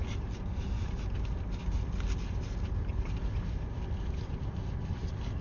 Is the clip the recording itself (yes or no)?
yes